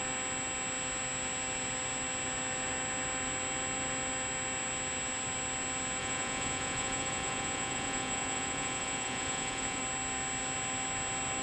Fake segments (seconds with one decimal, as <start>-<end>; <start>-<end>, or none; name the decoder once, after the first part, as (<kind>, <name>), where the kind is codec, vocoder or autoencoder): 6.0-9.8 (vocoder, Vocos)